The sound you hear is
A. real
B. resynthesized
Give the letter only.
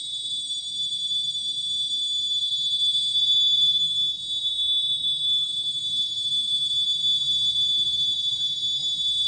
B